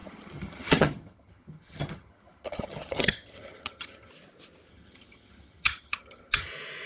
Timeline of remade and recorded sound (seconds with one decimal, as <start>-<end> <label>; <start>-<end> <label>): 0.0-4.1 remade; 4.1-4.7 recorded; 4.7-6.5 remade; 6.5-6.9 recorded